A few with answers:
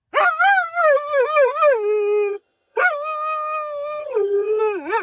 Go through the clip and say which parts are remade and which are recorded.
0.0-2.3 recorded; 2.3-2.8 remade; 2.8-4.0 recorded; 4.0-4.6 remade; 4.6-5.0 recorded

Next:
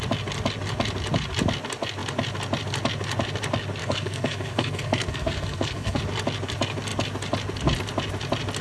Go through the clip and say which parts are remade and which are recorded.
0.0-3.8 recorded; 3.8-6.0 remade; 6.0-8.6 recorded